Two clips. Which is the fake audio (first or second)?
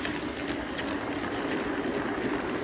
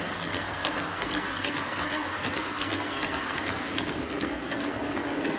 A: second